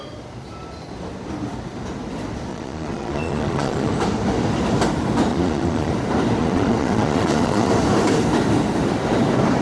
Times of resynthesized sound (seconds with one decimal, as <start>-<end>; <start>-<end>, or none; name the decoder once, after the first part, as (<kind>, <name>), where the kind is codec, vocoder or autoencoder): 2.5-3.9 (vocoder, Vocos); 5.3-5.9; 6.4-7.7